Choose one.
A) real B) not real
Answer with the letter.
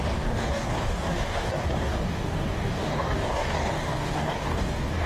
B